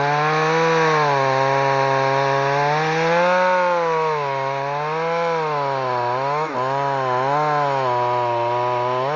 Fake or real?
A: real